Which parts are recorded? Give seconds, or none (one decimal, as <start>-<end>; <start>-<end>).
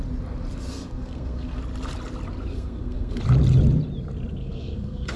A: 0.0-0.7; 1.6-2.5; 3.2-4.4